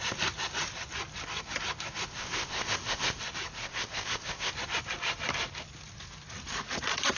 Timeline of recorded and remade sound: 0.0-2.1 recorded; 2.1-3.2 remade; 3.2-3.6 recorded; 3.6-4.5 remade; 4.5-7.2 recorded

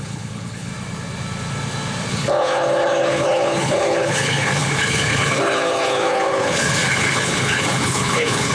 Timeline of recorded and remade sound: 0.0-0.7 remade; 0.7-2.1 recorded; 2.1-8.5 remade

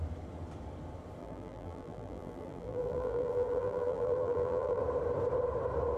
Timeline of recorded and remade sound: 0.0-1.2 recorded; 1.2-4.8 remade; 4.8-6.0 recorded

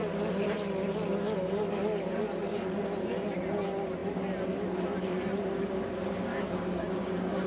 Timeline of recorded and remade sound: 0.0-6.3 recorded; 6.3-7.5 remade

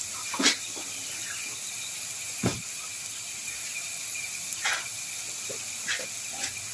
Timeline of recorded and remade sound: 0.0-6.7 recorded